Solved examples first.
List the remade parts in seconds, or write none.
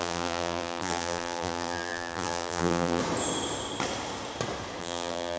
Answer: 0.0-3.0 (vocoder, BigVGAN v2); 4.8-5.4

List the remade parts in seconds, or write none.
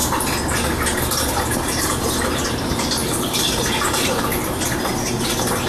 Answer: 1.2-4.3 (vocoder, BigVGAN v2)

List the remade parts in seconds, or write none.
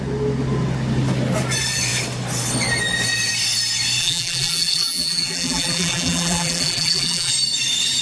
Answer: 4.0-7.3 (vocoder, BigVGAN v2)